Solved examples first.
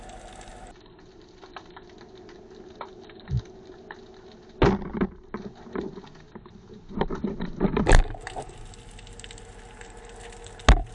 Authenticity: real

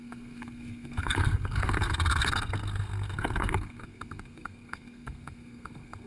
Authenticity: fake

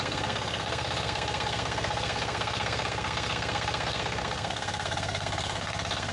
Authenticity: fake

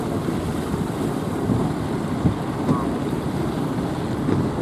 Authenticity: real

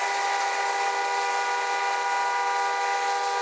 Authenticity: real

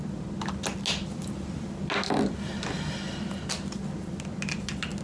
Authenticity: real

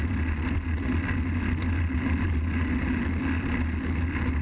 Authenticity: real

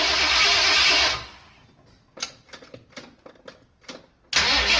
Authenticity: real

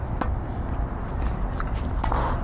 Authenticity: real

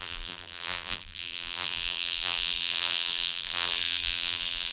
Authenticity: fake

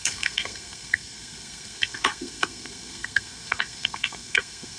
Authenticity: fake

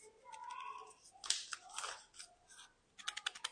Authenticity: real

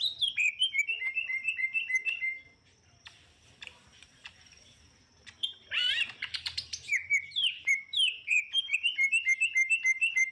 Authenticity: fake